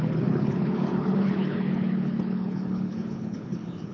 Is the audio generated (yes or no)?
yes